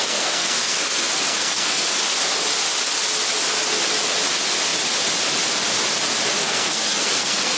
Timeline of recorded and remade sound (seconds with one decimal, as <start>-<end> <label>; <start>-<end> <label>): 0.0-2.0 remade; 2.0-6.4 recorded; 6.4-7.6 remade